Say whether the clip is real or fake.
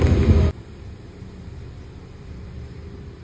fake